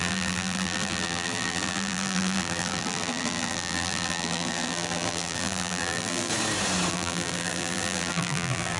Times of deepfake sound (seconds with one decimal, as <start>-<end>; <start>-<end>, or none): 0.0-6.3; 6.9-8.8